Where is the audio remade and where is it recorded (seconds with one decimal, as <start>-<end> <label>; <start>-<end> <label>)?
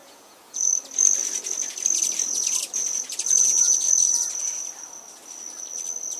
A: 0.0-0.7 remade; 0.7-6.2 recorded